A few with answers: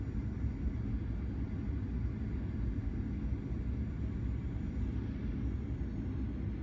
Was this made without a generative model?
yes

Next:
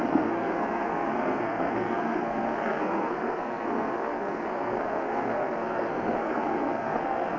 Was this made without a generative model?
no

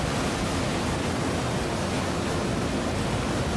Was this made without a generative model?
yes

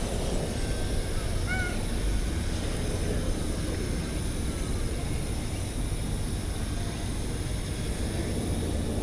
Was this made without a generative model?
yes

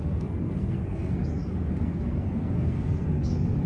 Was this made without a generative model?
no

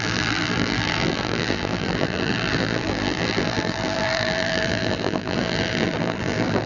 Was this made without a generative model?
no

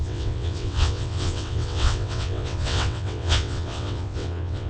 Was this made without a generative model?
no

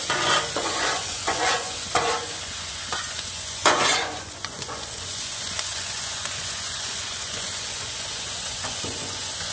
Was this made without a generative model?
no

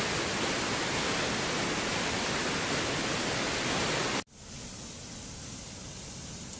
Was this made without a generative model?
yes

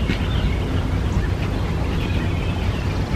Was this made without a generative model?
yes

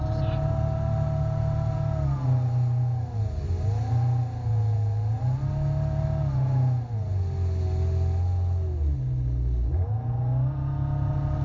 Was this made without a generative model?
yes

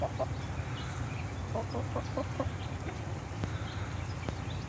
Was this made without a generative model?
yes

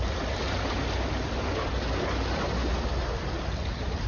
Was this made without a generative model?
yes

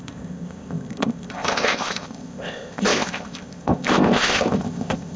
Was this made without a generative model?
no